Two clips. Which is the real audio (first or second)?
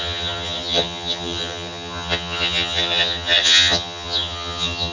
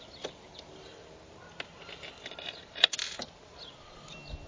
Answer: second